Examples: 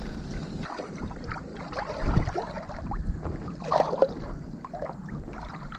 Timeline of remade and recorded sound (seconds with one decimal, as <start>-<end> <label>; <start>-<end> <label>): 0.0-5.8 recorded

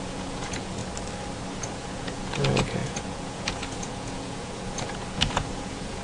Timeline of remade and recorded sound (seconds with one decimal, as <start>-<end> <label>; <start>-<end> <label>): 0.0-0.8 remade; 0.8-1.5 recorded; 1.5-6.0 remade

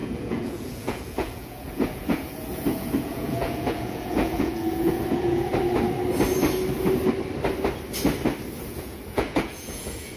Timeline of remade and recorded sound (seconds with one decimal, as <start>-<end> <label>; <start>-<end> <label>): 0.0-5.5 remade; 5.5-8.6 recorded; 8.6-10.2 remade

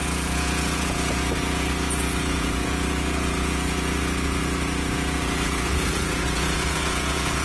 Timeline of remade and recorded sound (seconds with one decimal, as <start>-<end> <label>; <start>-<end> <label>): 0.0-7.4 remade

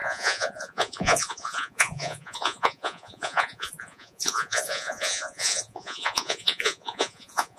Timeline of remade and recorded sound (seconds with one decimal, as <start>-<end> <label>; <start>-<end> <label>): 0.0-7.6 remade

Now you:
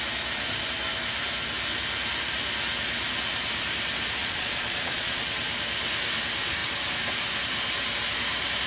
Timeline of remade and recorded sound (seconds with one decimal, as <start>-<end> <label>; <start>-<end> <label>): 0.0-4.2 recorded; 4.2-5.2 remade; 5.2-8.7 recorded

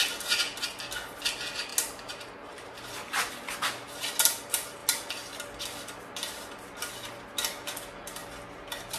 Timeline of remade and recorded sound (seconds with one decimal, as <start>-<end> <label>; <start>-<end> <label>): 0.0-9.0 recorded

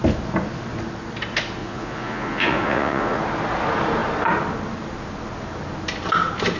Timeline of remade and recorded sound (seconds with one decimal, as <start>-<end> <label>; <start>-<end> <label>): 0.0-1.6 recorded; 1.6-3.2 remade; 3.2-6.6 recorded